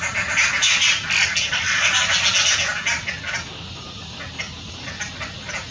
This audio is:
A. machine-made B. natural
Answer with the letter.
B